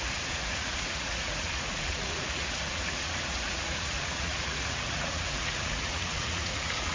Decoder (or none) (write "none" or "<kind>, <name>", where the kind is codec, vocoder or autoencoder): vocoder, Vocos